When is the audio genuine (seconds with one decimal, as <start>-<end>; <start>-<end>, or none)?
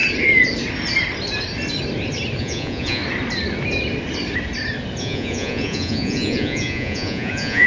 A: 0.0-2.4; 3.0-5.0